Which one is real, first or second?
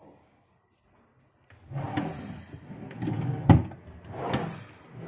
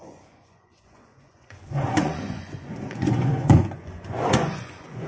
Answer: first